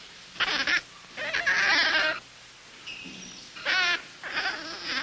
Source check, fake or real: real